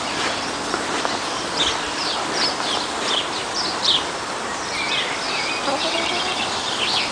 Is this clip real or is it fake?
fake